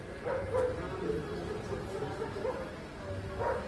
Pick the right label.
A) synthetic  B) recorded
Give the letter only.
B